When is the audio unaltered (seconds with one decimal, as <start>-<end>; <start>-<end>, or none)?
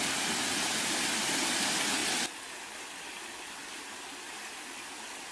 0.0-5.3